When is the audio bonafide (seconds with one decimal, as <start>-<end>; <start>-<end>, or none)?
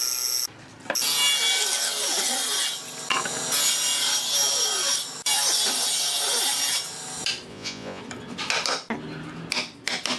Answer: 0.0-7.5; 8.0-10.2